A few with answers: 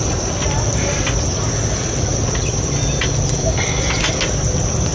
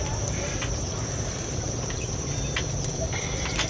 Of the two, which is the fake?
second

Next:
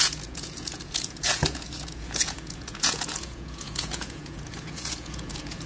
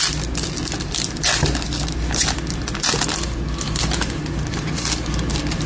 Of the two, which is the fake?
first